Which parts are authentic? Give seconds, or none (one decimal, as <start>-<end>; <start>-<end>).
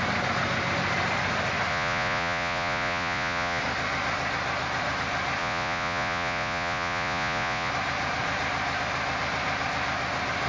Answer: 0.0-1.7; 3.6-5.4; 7.7-10.5